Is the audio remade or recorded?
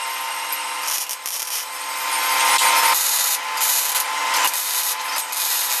recorded